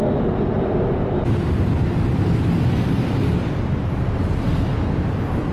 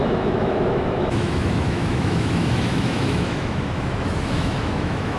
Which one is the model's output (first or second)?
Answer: second